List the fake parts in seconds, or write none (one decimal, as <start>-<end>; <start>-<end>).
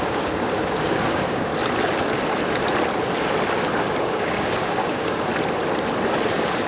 0.0-1.5; 3.8-5.3; 6.3-6.7